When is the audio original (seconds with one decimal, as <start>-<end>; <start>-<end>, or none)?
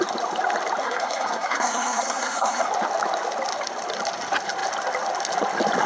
0.0-0.8; 2.7-5.9